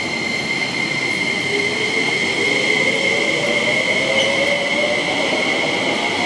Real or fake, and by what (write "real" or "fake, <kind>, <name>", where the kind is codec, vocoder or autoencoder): real